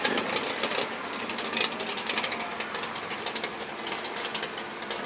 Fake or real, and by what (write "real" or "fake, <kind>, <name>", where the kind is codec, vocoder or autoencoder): real